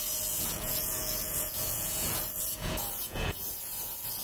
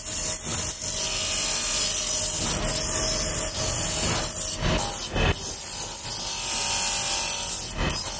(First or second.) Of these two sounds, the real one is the second